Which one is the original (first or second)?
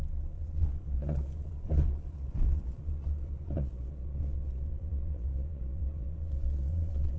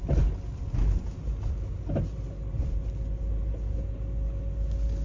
second